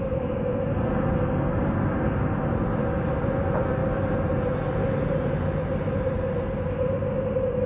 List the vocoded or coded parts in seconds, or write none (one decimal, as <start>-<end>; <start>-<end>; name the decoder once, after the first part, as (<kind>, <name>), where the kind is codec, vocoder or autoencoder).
none